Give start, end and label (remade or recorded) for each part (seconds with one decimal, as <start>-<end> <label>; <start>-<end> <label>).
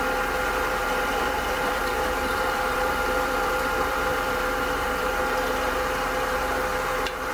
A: 0.0-0.8 recorded; 0.8-5.2 remade; 5.2-7.3 recorded